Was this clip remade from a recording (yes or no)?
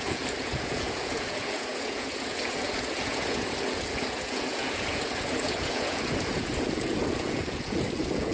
yes